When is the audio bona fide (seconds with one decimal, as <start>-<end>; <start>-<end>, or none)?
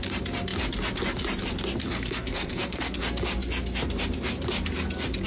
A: 0.0-1.8; 3.0-5.3